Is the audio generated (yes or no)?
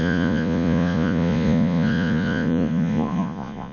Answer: yes